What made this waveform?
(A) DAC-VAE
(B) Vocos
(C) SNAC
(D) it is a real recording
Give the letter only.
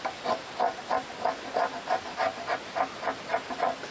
D